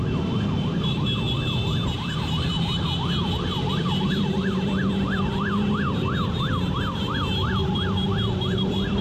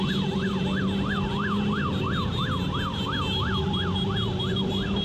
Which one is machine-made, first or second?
first